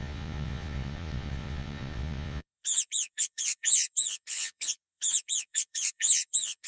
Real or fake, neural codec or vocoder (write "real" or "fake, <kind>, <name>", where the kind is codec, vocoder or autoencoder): fake, vocoder, Vocos